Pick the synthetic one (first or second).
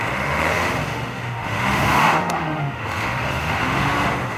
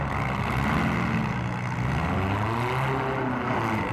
first